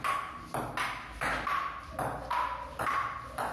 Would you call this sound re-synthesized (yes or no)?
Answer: no